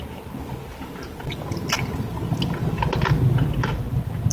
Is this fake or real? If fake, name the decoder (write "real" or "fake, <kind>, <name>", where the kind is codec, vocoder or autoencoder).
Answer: real